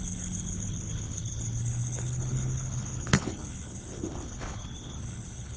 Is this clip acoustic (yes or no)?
no